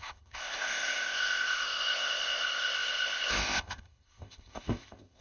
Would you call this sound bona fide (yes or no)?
no